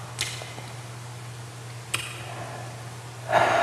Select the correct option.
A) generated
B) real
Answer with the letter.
B